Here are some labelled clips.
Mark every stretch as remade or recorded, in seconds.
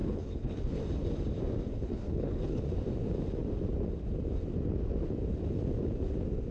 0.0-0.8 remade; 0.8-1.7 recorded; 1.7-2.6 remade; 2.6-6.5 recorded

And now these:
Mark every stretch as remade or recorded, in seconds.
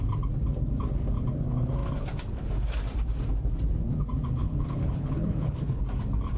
0.0-4.4 recorded; 4.4-5.8 remade; 5.8-6.4 recorded